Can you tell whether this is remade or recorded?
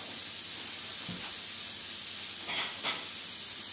recorded